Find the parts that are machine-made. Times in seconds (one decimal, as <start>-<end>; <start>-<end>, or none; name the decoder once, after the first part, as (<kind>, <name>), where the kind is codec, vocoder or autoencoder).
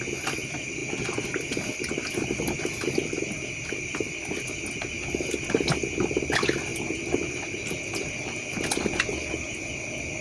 none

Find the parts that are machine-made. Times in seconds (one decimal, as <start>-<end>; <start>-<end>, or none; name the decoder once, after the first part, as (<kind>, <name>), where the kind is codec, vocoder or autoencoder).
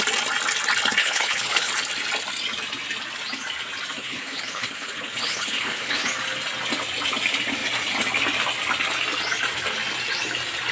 1.0-1.7 (codec, HILCodec); 4.0-6.1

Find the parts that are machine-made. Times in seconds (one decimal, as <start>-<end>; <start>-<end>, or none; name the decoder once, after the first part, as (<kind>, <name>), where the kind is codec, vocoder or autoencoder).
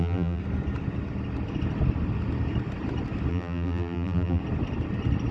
0.0-0.4 (vocoder, BigVGAN v2); 3.3-4.4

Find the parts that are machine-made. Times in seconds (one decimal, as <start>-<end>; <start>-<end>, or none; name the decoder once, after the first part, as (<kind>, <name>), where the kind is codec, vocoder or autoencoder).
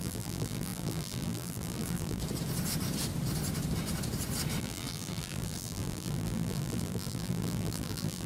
0.0-2.2 (vocoder, BigVGAN v2); 4.6-8.3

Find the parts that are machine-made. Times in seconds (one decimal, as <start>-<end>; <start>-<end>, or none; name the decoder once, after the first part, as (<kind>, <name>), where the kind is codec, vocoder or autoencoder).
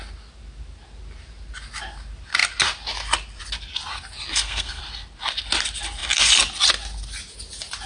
4.3-4.8 (codec, SNAC)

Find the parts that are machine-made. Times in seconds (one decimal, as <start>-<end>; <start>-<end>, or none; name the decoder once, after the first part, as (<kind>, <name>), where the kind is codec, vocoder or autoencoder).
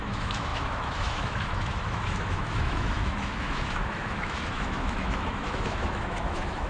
0.0-6.7 (autoencoder, DAC-VAE)